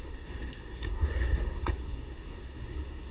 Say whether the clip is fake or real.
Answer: fake